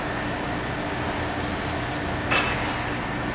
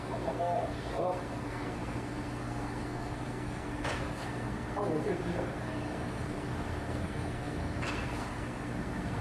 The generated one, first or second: second